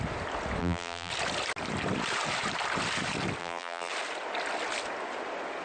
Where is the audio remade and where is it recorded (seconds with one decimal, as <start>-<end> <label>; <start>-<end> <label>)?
0.0-0.6 recorded; 0.6-1.1 remade; 1.1-3.4 recorded; 3.4-3.9 remade; 3.9-5.6 recorded